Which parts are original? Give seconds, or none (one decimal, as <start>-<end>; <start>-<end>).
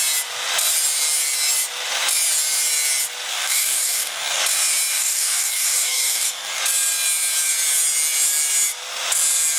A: 0.0-3.3; 4.4-4.9; 6.6-9.6